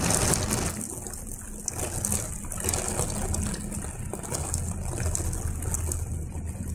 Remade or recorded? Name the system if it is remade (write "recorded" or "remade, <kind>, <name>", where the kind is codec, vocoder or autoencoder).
recorded